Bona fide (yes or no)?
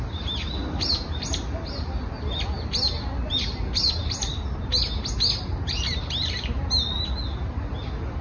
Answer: yes